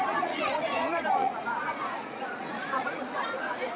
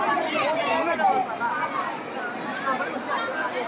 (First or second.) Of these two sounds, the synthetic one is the first